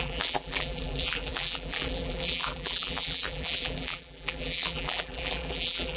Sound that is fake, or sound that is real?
fake